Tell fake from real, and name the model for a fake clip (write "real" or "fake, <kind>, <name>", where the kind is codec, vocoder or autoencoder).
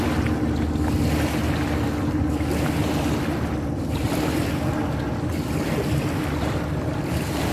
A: real